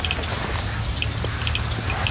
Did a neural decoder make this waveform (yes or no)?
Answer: no